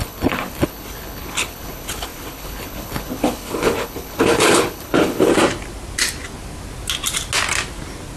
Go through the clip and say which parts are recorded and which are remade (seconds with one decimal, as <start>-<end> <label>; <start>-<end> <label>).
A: 0.0-5.3 remade; 5.3-8.2 recorded